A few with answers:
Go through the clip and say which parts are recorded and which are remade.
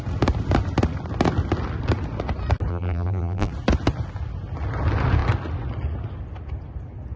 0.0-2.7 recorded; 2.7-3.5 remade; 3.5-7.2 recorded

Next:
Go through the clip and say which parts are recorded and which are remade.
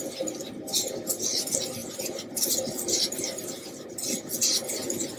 0.0-5.2 recorded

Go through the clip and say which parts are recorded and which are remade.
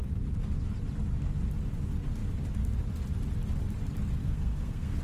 0.0-4.2 recorded; 4.2-5.0 remade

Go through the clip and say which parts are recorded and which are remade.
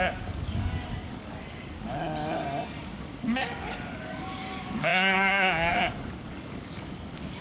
0.0-2.0 remade; 2.0-2.8 recorded; 2.8-7.4 remade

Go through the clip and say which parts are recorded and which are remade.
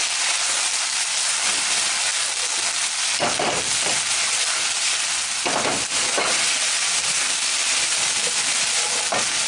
0.0-9.5 recorded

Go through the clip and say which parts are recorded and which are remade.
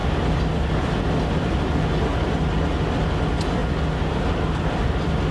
0.0-5.3 recorded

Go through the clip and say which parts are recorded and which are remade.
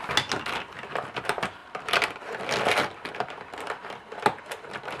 0.0-5.0 recorded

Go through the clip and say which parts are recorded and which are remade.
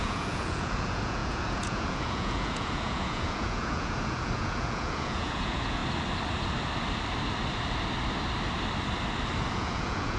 0.0-5.8 remade; 5.8-9.5 recorded; 9.5-10.2 remade